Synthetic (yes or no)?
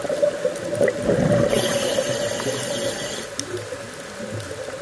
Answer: no